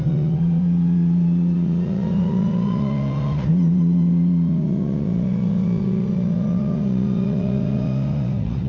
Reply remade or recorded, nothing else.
remade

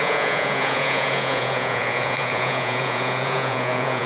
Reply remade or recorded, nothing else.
remade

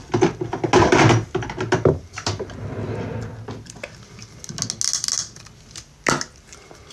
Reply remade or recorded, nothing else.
recorded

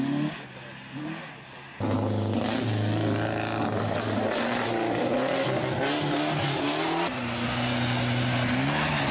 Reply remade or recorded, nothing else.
recorded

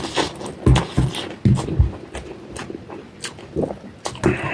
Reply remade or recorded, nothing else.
recorded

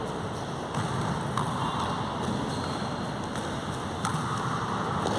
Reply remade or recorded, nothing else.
recorded